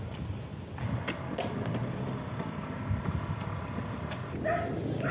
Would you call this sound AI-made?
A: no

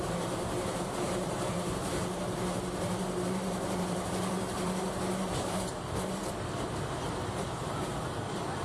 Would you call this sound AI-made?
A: yes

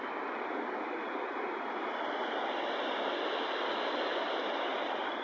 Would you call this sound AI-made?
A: yes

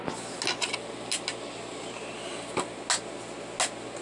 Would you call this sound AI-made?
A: no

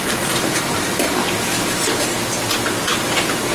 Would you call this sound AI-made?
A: yes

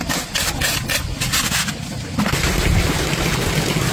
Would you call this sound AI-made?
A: no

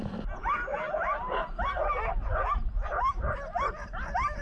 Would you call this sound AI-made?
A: no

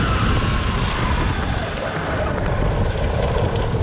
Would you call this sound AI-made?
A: no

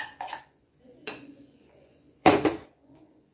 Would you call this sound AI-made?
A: yes